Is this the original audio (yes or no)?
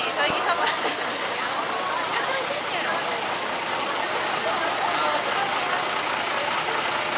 yes